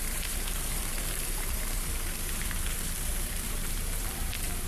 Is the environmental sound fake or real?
fake